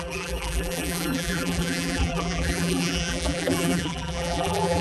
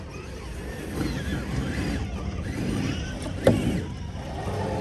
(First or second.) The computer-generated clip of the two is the first